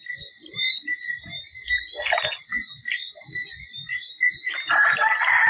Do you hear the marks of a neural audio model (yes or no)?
no